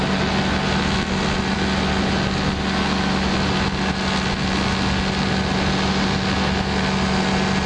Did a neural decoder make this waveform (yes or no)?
no